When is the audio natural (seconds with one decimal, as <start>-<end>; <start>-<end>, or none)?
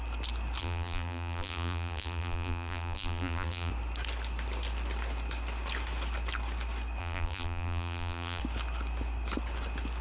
0.0-0.6; 3.7-7.0; 8.4-10.0